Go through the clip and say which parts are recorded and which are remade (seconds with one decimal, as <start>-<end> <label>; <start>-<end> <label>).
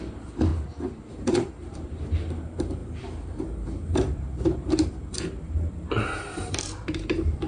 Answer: 0.0-0.5 remade; 0.5-1.1 recorded; 1.1-7.5 remade